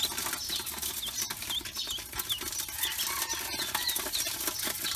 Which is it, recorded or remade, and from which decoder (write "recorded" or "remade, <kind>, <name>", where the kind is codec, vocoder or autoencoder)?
recorded